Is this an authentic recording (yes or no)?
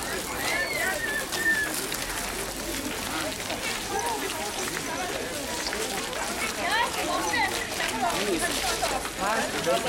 yes